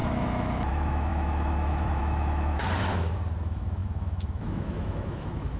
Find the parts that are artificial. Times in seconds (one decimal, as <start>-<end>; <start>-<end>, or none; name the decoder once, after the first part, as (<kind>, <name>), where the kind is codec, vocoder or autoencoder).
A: 0.0-2.6 (autoencoder, DAC-VAE); 3.4-5.6